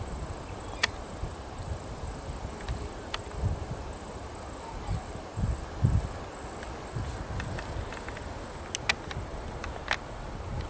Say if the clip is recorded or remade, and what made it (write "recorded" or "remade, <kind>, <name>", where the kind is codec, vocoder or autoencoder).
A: recorded